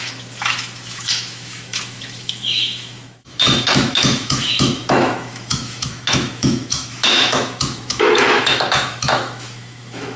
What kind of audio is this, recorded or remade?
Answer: remade